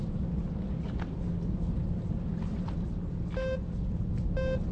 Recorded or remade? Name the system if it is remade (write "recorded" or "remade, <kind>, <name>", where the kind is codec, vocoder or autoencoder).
recorded